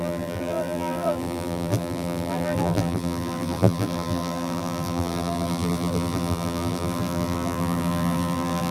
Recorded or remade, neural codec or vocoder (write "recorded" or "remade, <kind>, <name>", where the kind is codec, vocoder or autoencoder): remade, vocoder, BigVGAN v2